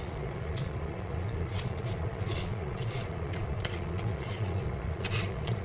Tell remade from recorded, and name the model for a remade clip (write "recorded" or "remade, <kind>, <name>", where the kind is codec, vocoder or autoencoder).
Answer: remade, vocoder, Vocos